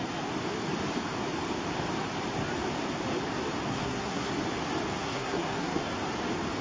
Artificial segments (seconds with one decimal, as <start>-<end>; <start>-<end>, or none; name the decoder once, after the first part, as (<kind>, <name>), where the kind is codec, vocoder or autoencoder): 3.7-4.3 (codec, SNAC); 5.0-5.8

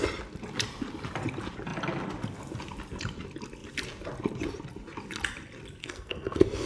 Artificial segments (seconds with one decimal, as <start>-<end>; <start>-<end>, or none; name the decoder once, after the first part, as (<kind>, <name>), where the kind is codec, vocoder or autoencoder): 5.8-6.7 (codec, SNAC)

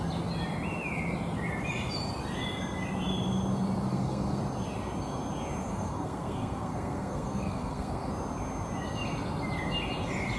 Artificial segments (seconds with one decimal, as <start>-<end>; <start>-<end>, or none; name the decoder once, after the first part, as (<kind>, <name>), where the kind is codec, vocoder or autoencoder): 3.9-4.4 (codec, SNAC); 5.7-8.1

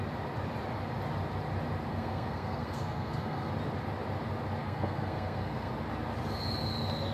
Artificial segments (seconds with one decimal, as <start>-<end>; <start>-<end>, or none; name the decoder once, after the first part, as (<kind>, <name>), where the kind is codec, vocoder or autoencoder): 1.9-3.5 (codec, SNAC); 4.6-5.7

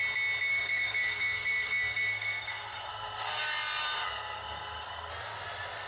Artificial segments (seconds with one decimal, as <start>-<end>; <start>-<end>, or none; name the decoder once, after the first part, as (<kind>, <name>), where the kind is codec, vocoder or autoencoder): 0.5-3.4 (codec, SNAC); 3.8-5.1

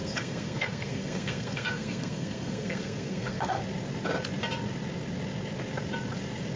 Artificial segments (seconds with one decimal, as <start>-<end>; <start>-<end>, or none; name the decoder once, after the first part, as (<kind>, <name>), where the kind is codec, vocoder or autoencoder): 0.0-3.6 (codec, SNAC)

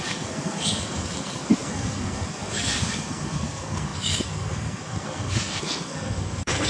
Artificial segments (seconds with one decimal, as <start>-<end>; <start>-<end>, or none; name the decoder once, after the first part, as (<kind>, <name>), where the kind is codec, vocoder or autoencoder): 0.0-6.7 (codec, SNAC)

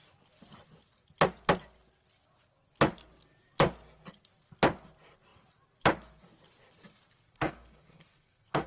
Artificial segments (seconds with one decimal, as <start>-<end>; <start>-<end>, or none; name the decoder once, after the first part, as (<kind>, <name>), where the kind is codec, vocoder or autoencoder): 7.3-8.7 (codec, SNAC)